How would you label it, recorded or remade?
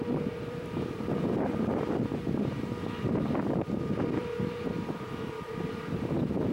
remade